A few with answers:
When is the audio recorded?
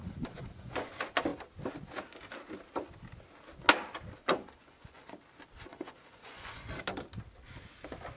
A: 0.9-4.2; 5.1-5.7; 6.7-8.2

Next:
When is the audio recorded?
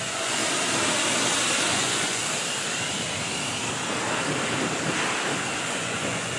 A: 0.4-1.7; 2.2-5.6